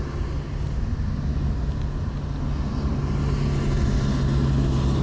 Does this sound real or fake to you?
real